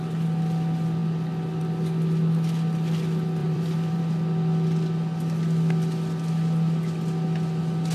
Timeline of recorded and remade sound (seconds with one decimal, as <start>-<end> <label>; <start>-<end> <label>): 0.0-3.4 recorded; 3.4-4.0 remade; 4.0-7.9 recorded

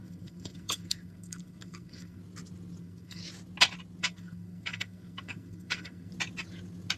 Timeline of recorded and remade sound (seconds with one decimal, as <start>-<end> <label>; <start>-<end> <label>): 0.0-2.2 remade; 2.2-2.8 recorded; 2.8-3.2 remade; 3.2-4.0 recorded; 4.0-6.1 remade; 6.1-7.0 recorded

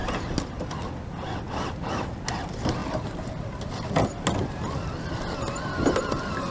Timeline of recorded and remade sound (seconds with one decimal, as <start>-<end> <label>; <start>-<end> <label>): 0.0-6.5 recorded